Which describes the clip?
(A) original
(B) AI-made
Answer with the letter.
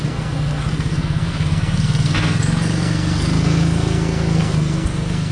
B